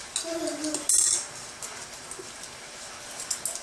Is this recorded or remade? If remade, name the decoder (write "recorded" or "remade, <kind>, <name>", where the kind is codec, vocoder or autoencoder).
recorded